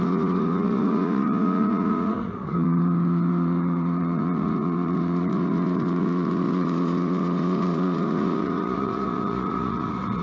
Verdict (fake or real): fake